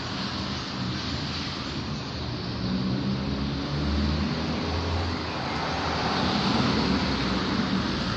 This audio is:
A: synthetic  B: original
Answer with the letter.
B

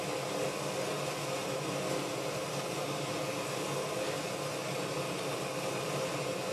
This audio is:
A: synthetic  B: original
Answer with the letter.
B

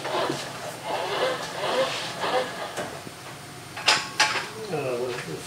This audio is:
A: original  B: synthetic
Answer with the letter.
B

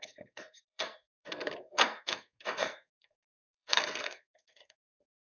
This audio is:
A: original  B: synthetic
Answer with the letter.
B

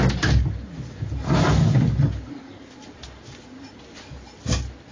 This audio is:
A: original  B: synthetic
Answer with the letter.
A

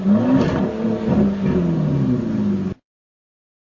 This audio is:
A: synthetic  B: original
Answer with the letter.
B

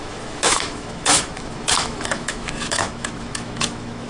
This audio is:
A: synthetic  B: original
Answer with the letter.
A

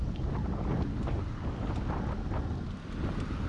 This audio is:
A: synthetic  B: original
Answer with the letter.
B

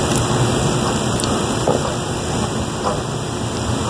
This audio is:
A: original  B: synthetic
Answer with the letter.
A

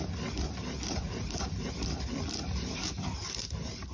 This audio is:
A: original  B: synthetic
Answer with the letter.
A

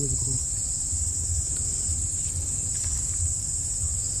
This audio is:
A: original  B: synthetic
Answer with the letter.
B